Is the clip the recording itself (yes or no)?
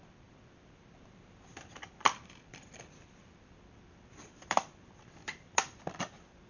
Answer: yes